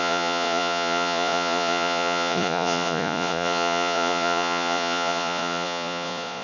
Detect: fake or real fake